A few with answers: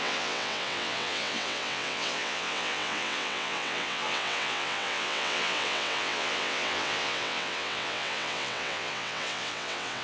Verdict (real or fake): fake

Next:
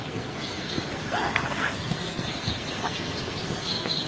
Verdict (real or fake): fake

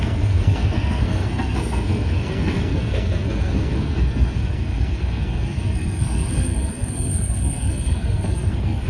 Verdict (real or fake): fake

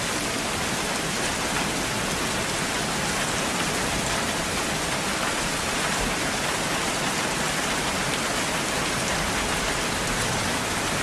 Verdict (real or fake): real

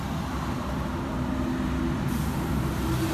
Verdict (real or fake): real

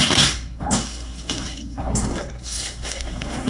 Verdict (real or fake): fake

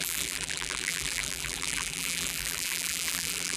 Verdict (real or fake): fake